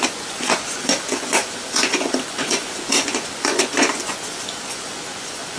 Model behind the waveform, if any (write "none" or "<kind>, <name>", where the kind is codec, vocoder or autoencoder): vocoder, Vocos